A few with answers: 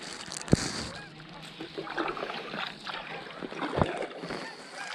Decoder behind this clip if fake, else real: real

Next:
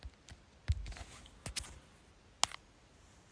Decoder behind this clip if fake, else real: real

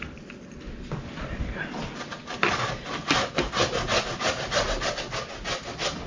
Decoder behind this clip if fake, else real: real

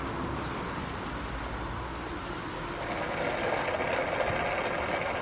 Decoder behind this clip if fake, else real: real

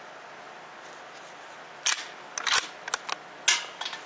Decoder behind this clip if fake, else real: real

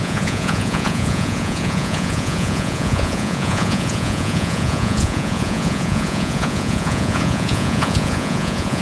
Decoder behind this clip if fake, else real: fake, vocoder, Vocos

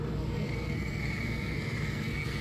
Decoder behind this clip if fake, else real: fake, codec, SNAC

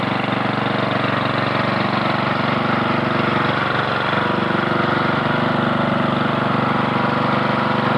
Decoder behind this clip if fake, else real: real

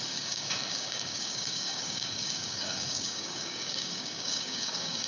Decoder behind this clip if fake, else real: fake, codec, DAC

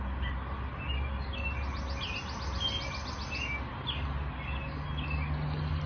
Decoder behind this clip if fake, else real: real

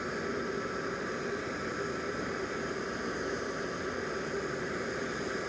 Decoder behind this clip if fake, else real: real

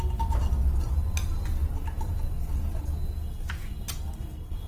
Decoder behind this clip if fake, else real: real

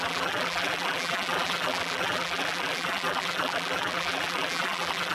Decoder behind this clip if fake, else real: fake, vocoder, BigVGAN v2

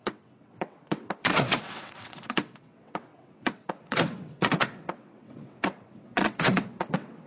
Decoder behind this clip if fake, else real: fake, vocoder, WaveNeXt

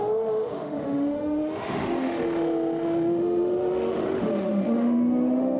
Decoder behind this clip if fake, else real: fake, autoencoder, DAC-VAE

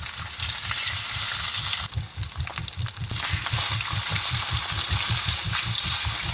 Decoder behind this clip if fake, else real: real